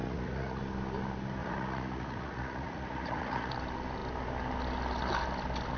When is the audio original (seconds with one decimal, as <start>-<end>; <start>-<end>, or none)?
0.6-1.4; 3.5-5.8